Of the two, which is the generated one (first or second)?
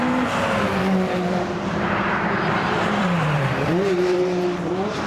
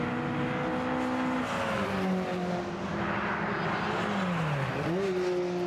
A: first